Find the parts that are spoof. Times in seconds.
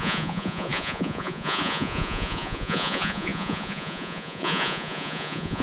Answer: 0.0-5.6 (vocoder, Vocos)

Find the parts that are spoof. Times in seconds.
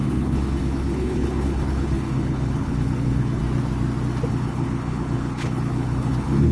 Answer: 0.0-3.4 (codec, HILCodec); 4.3-6.5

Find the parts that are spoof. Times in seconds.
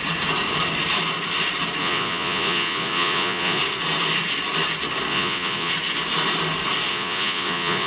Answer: 1.8-3.6 (vocoder, Vocos); 5.1-5.7; 6.9-7.9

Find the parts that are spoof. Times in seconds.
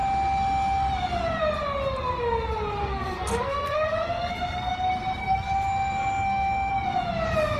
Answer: 2.8-4.7 (codec, SNAC); 5.2-6.7